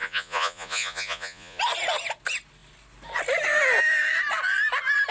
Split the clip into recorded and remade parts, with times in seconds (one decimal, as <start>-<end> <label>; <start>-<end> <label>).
0.0-1.6 remade; 1.6-5.1 recorded